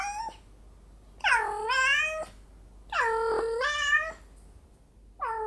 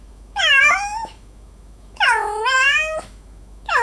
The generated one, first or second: second